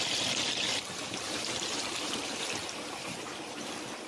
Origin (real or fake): fake